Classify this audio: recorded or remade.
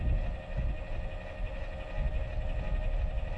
recorded